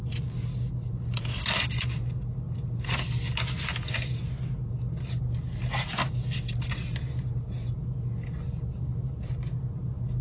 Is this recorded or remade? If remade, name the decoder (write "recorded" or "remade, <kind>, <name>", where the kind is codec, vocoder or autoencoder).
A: recorded